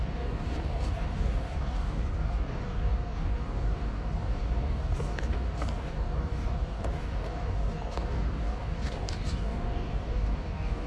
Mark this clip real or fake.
fake